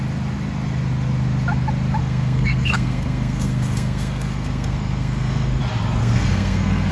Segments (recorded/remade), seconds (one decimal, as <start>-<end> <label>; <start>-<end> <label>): 0.0-2.0 recorded; 2.0-5.6 remade; 5.6-6.0 recorded; 6.0-6.9 remade